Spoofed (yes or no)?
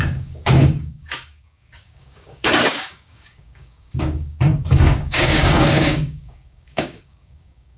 yes